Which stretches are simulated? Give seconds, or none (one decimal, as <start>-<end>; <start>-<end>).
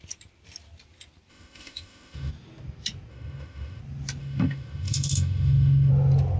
1.3-2.3; 3.1-3.8; 4.2-5.9